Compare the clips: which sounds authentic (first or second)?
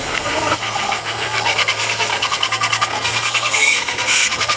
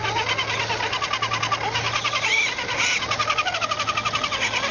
second